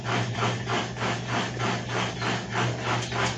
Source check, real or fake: real